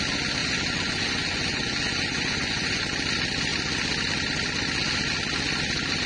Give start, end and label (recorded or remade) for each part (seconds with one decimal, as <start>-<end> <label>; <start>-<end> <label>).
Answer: 0.0-0.4 recorded; 0.4-2.8 remade; 2.8-6.1 recorded